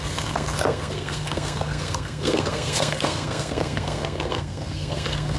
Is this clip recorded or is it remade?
remade